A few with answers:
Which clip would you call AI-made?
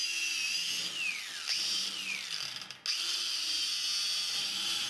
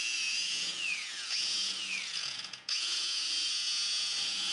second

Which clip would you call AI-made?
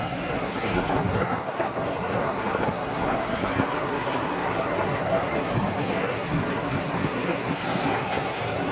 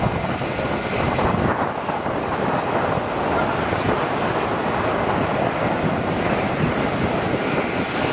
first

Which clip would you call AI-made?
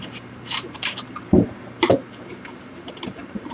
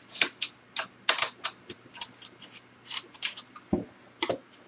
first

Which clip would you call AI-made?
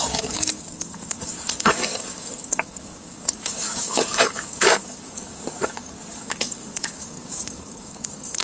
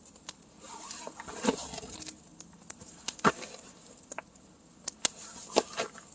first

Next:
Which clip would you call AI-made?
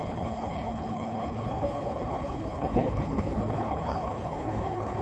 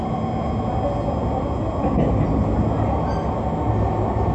first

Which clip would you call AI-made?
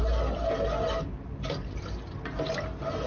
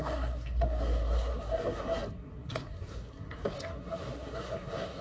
second